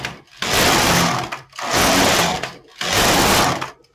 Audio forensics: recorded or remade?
recorded